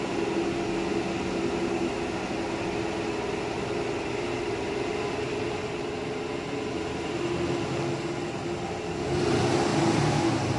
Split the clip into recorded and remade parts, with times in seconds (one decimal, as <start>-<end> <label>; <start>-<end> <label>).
0.0-9.7 recorded; 9.7-10.6 remade